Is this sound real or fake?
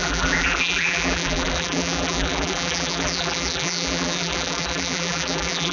fake